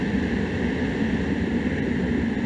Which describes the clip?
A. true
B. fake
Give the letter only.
A